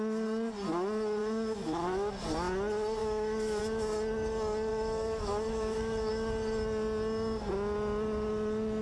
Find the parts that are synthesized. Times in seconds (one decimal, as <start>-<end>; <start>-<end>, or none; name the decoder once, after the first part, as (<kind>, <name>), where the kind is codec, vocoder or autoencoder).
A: 1.2-2.1 (autoencoder, DAC-VAE); 3.0-3.6; 4.7-6.1